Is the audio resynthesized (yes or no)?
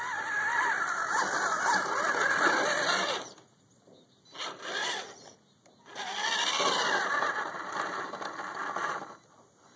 no